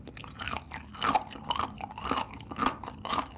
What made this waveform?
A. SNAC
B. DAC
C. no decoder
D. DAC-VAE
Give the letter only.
C